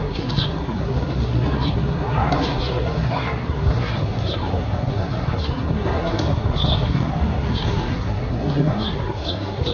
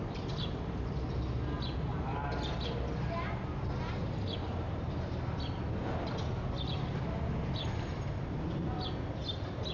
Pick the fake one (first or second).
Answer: first